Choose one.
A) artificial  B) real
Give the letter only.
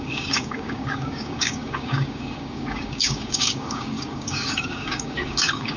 A